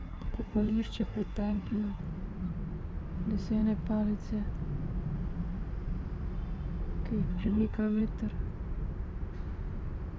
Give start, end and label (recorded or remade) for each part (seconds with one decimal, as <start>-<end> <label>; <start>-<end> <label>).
0.0-2.0 remade; 2.0-7.3 recorded; 7.3-8.0 remade; 8.0-10.2 recorded